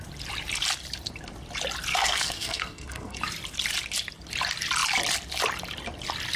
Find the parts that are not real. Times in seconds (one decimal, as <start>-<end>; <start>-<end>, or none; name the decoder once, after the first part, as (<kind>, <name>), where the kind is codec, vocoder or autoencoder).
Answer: 1.9-3.2 (codec, SNAC)